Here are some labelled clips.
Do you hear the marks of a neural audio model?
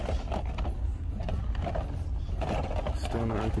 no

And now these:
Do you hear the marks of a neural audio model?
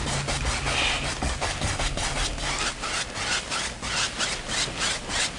no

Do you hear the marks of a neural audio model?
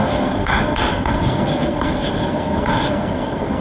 yes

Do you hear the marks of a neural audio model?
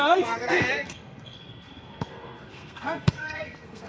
yes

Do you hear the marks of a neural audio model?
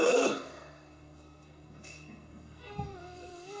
yes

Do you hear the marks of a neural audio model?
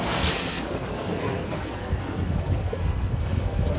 yes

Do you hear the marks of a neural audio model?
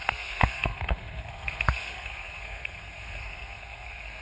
yes